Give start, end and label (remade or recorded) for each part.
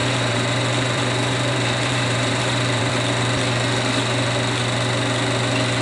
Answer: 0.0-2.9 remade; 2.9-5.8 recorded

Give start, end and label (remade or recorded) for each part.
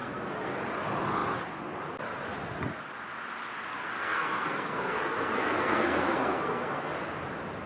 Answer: 0.0-0.6 remade; 0.6-3.8 recorded; 3.8-6.9 remade; 6.9-7.7 recorded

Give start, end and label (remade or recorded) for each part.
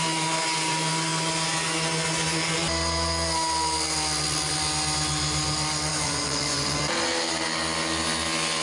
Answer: 0.0-5.9 recorded; 5.9-6.8 remade; 6.8-8.6 recorded